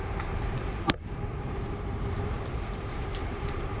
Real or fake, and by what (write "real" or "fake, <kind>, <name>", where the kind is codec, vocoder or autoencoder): fake, vocoder, BigVGAN v2